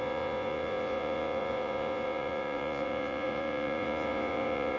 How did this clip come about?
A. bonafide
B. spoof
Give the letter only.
B